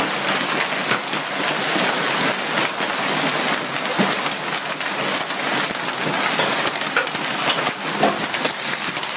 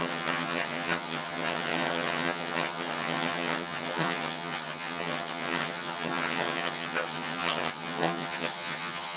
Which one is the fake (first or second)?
second